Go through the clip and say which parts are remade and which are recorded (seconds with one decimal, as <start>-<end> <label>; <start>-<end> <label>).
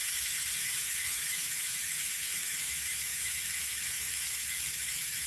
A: 0.0-5.3 remade